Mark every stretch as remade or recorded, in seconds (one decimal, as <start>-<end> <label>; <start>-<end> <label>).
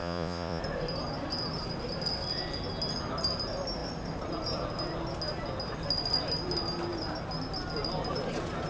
0.0-0.6 remade; 0.6-8.7 recorded